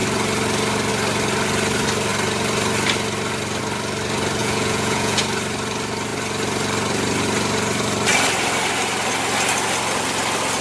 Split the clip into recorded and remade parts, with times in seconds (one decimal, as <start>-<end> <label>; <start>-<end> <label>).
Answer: 0.0-4.4 recorded; 4.4-5.2 remade; 5.2-10.6 recorded